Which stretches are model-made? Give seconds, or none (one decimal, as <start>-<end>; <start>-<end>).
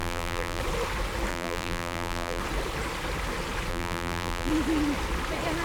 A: 0.0-0.6; 1.3-2.4; 3.7-4.5